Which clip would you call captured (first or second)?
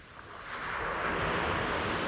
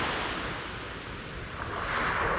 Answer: first